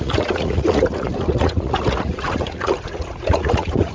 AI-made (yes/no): yes